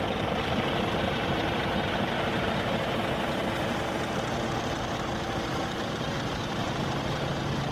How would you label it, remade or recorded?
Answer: remade